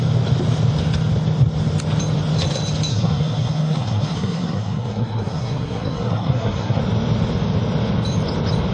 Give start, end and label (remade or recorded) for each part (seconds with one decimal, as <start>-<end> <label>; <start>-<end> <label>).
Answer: 0.0-2.9 recorded; 2.9-6.8 remade; 6.8-8.7 recorded